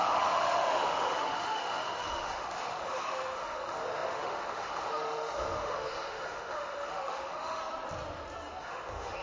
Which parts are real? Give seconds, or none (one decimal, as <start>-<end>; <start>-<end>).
7.6-8.6